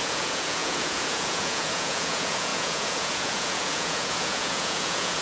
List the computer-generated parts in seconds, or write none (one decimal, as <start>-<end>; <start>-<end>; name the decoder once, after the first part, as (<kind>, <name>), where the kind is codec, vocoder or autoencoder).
0.0-5.2 (vocoder, Vocos)